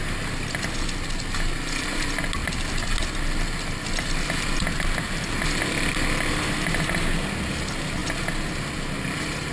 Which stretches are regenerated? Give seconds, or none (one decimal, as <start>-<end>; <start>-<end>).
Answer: none